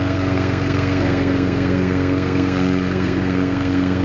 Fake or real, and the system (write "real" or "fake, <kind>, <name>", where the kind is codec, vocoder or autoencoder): fake, codec, SNAC